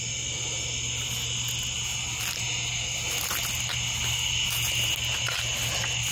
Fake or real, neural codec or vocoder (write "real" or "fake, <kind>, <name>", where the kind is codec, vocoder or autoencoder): real